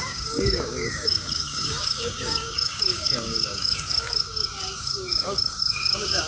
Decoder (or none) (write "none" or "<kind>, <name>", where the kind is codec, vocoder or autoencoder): codec, DAC